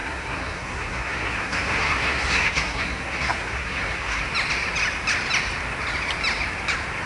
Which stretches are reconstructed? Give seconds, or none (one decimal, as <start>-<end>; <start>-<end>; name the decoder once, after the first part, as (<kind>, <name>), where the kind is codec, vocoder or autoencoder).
0.0-4.2 (codec, SNAC)